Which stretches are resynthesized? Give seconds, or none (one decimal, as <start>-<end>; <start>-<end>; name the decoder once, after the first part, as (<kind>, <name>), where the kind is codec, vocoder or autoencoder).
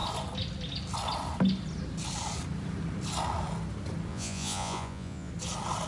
4.1-5.3 (vocoder, Vocos)